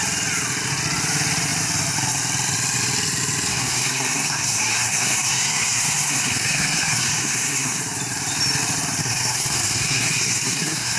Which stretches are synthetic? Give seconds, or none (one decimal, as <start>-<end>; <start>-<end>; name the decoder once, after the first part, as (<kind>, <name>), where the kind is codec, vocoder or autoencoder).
3.5-7.8 (codec, SNAC); 9.0-11.0